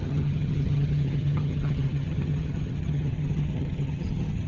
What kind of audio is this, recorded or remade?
remade